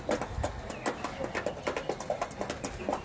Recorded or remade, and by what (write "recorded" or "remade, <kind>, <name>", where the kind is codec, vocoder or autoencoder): recorded